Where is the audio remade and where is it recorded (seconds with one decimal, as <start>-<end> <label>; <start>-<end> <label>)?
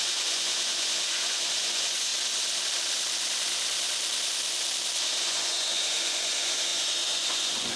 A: 0.0-2.1 remade; 2.1-5.2 recorded; 5.2-7.8 remade